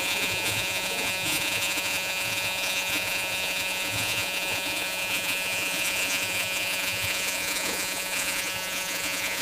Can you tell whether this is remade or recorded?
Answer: remade